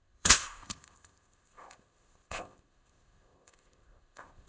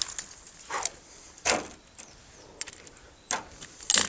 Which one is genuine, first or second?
second